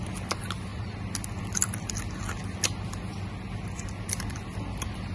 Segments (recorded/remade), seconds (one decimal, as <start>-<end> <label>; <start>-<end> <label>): 0.0-5.1 recorded